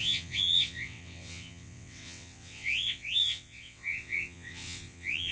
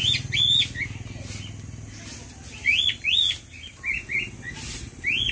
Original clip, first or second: second